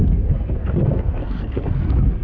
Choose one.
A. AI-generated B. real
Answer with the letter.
A